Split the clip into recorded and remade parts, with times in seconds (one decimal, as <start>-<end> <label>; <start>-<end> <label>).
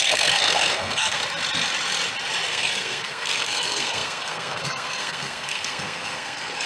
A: 0.0-1.2 remade; 1.2-2.5 recorded; 2.5-6.7 remade